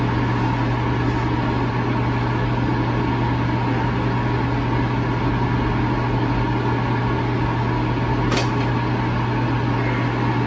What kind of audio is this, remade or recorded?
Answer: recorded